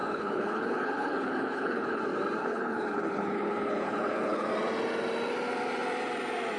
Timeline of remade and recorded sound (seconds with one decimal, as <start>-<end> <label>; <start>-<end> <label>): 0.0-2.0 remade; 2.0-2.4 recorded; 2.4-4.5 remade; 4.5-6.6 recorded